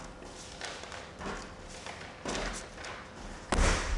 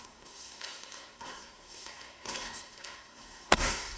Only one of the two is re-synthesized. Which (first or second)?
second